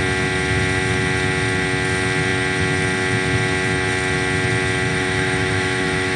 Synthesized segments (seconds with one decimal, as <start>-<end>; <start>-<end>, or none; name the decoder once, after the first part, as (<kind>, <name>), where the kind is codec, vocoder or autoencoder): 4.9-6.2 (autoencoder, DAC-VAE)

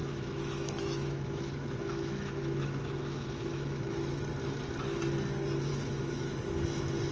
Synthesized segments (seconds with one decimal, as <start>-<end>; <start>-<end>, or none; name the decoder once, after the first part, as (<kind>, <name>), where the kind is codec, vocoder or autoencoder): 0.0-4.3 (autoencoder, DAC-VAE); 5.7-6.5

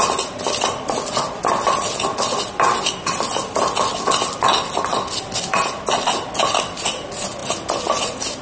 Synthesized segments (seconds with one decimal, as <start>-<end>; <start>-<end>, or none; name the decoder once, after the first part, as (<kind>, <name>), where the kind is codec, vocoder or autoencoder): none

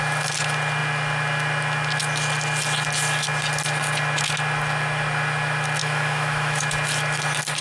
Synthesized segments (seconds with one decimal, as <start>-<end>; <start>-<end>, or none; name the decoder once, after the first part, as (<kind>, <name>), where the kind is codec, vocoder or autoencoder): 5.8-6.6 (autoencoder, DAC-VAE)

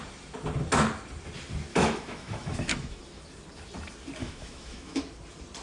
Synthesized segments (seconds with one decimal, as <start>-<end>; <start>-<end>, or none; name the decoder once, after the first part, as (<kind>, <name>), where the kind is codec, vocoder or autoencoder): 1.7-3.0 (autoencoder, DAC-VAE); 4.2-5.0